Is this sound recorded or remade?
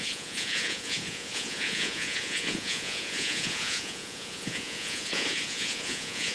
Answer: remade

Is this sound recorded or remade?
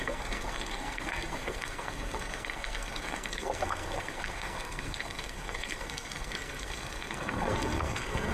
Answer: remade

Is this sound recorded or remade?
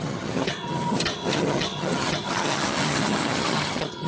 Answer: remade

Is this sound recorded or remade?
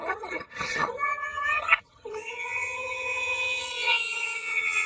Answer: remade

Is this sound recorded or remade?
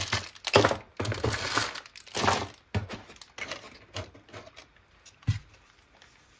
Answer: recorded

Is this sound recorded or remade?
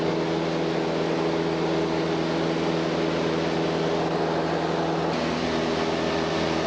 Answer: recorded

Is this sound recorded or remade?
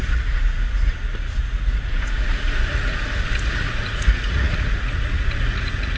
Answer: remade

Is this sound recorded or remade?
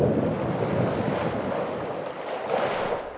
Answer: recorded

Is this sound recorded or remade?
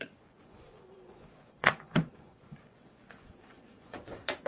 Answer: remade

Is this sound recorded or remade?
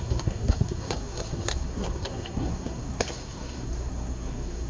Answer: remade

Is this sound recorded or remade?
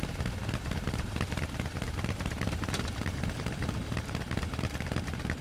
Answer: remade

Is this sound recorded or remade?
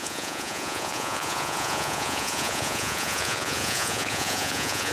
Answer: remade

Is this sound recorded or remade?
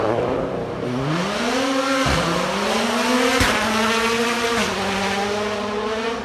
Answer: recorded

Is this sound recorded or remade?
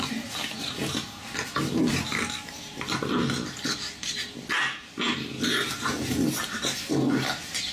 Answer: recorded